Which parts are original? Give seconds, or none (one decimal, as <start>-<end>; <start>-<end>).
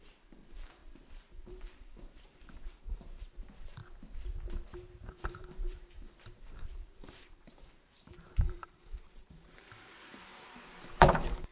3.8-5.1